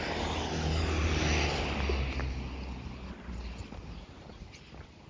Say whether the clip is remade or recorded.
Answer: recorded